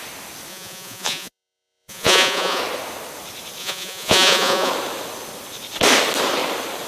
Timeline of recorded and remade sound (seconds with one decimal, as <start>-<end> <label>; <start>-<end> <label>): 0.0-0.5 recorded; 0.5-2.6 remade; 2.6-3.6 recorded; 3.6-4.7 remade; 4.7-6.9 recorded